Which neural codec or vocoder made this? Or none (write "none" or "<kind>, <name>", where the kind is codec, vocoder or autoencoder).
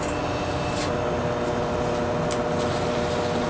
none